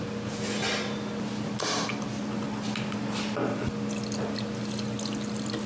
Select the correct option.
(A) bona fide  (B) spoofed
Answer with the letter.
A